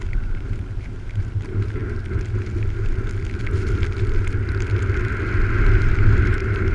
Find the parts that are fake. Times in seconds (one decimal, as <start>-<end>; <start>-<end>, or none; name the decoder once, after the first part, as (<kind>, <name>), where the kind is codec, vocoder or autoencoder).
0.0-1.8 (vocoder, BigVGAN v2); 5.8-6.7